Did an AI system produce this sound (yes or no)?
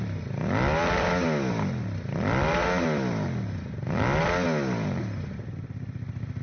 no